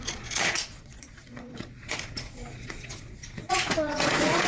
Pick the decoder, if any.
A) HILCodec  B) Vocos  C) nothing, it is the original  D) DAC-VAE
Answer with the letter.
B